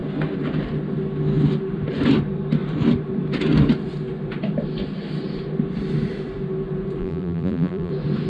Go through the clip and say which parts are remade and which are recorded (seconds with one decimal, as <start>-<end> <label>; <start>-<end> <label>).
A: 0.0-7.0 recorded; 7.0-7.9 remade; 7.9-8.3 recorded